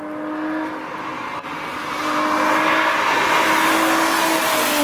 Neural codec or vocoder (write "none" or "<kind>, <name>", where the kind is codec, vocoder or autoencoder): none